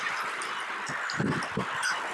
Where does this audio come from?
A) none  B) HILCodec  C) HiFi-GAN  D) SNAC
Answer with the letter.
A